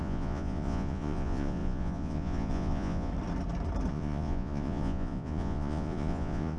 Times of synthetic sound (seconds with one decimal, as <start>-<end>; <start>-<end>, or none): 0.0-3.1; 3.9-6.6

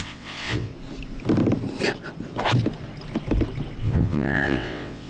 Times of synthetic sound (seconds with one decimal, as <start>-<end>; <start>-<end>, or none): 0.0-0.7; 3.8-5.1

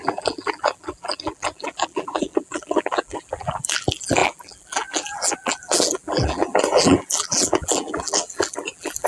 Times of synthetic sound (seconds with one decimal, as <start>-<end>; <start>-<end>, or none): 0.0-9.1

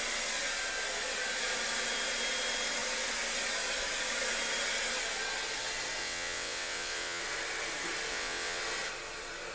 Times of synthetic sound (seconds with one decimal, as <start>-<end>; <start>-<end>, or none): 6.0-7.2; 8.1-8.6